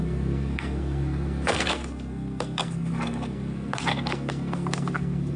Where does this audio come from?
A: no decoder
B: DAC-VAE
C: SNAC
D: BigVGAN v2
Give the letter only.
C